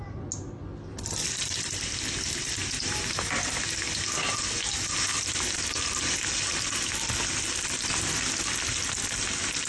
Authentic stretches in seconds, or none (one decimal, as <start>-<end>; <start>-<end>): 0.0-9.7